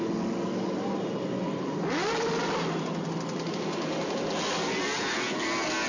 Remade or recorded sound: recorded